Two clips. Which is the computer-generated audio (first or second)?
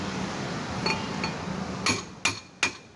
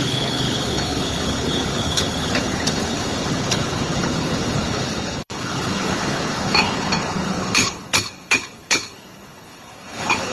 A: second